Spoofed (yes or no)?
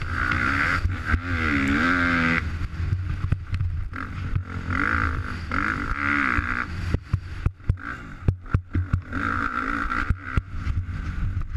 no